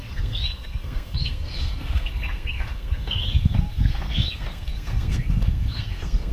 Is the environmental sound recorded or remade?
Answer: remade